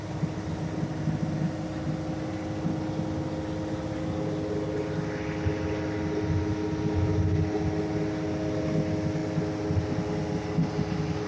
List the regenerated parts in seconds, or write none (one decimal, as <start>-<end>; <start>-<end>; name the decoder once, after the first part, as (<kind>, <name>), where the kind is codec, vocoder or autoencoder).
none